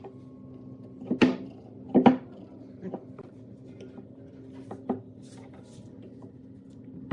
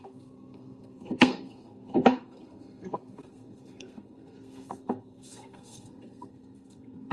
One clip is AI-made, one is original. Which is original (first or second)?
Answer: first